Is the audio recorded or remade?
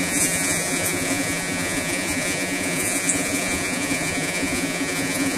remade